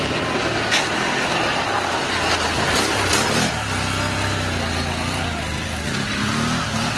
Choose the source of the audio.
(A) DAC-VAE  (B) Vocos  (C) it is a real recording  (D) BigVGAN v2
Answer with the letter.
C